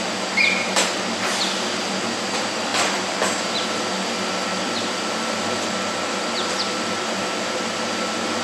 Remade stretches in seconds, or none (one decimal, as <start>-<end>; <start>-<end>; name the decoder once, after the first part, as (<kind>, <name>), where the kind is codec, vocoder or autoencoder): none